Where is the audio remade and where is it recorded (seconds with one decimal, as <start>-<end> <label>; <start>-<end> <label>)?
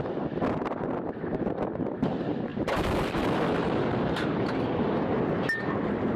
0.0-2.5 recorded; 2.5-4.5 remade; 4.5-6.2 recorded